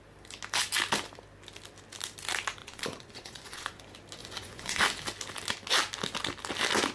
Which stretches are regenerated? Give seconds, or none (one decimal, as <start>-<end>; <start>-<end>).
2.6-3.8; 4.2-4.8